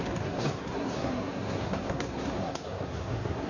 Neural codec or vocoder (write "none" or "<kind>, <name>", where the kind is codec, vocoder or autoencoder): codec, SNAC